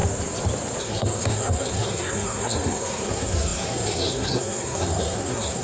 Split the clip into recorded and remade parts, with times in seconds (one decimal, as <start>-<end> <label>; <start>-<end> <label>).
0.0-0.8 recorded; 0.8-5.6 remade